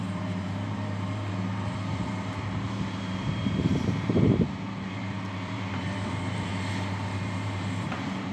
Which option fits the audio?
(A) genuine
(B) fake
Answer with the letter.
B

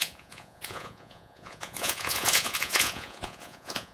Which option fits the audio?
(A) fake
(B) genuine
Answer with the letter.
A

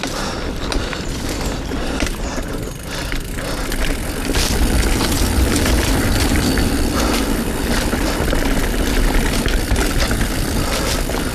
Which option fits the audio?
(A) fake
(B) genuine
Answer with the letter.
A